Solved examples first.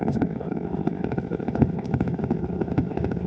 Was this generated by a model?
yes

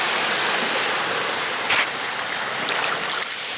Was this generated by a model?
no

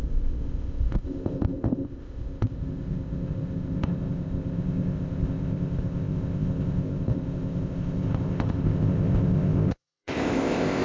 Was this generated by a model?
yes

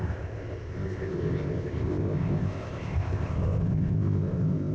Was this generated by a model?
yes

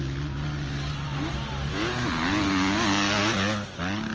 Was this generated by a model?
no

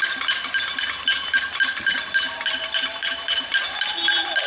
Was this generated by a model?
no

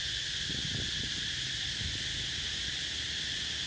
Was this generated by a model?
no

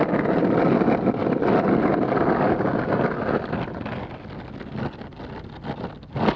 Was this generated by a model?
no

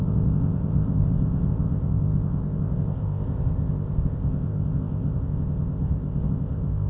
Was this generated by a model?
yes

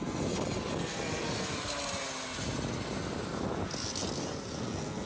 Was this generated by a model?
no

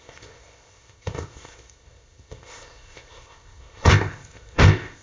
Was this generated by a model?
yes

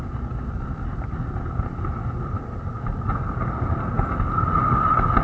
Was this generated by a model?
no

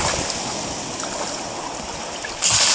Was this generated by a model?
no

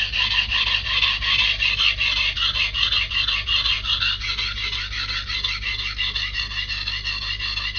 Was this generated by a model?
no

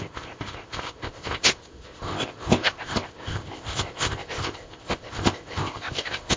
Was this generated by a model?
yes